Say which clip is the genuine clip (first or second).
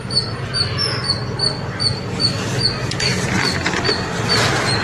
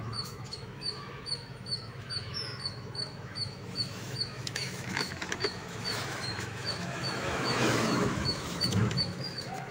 first